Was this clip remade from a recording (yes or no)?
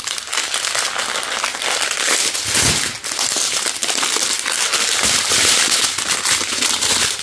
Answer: no